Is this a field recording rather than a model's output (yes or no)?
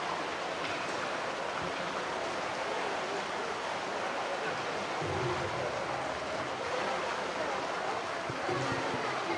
yes